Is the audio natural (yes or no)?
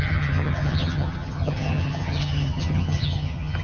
no